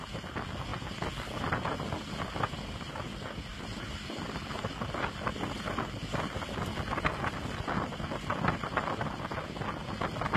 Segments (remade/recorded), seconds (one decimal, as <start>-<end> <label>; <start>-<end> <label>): 0.0-10.4 recorded